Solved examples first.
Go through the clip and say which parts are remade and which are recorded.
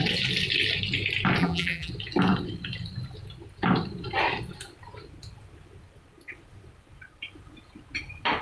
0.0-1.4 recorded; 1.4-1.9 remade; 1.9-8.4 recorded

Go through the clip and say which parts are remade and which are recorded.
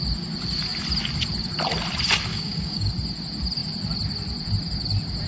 0.0-2.3 recorded; 2.3-2.9 remade; 2.9-5.3 recorded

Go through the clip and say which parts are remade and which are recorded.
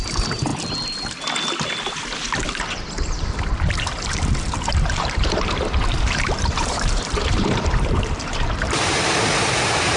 0.0-0.5 remade; 0.5-3.5 recorded; 3.5-10.0 remade